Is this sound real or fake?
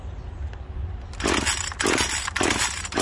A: real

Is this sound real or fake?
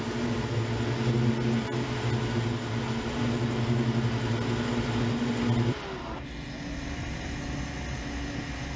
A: real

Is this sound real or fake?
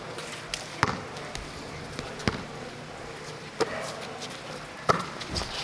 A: real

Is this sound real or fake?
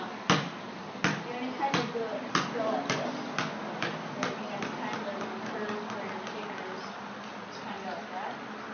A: real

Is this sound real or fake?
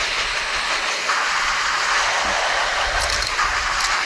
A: real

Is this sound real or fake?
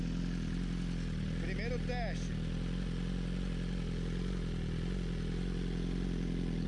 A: real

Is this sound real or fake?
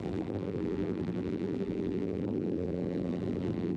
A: fake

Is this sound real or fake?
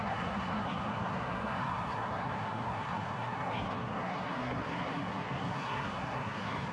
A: fake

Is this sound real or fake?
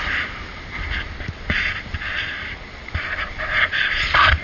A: real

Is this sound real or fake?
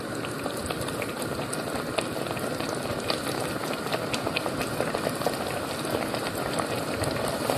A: real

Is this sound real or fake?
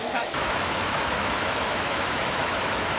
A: fake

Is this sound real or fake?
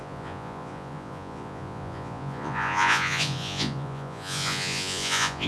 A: fake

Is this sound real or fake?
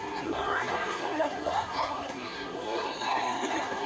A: fake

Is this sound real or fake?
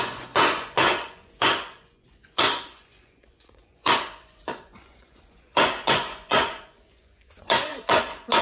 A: fake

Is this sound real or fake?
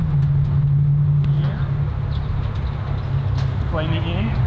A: real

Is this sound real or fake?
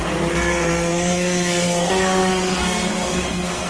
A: fake